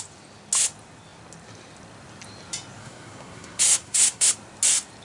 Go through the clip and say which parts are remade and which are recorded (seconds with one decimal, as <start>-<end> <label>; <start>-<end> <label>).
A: 0.0-2.8 recorded; 2.8-4.3 remade; 4.3-5.0 recorded